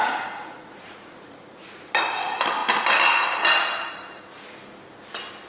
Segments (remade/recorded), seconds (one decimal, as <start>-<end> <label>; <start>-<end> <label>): 0.0-2.0 remade; 2.0-5.5 recorded